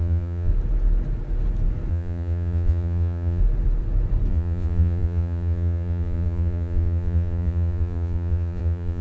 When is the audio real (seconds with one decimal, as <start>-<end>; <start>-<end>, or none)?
0.5-1.9; 3.4-4.3